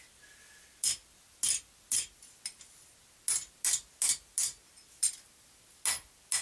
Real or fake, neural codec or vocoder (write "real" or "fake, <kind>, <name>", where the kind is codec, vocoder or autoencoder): real